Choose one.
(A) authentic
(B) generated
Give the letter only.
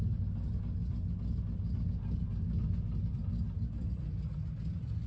A